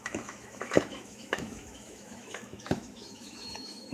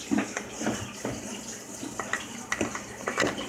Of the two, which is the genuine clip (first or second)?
second